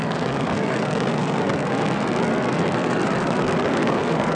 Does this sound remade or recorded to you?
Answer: remade